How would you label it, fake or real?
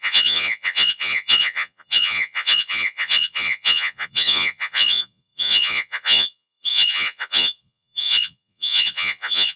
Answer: fake